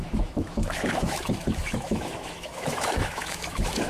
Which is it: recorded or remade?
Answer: remade